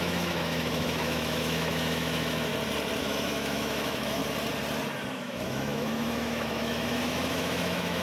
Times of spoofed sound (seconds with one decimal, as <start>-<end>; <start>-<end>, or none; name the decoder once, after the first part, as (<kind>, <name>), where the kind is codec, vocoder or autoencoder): 0.0-2.5 (autoencoder, DAC-VAE); 3.0-4.2; 5.1-8.0